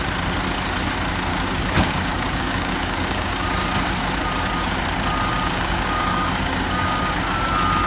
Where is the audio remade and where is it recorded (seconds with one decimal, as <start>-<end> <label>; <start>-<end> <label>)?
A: 0.0-1.3 recorded; 1.3-3.5 remade; 3.5-5.3 recorded; 5.3-7.0 remade; 7.0-7.9 recorded